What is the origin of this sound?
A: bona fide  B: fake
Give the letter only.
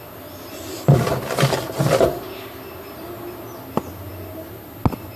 A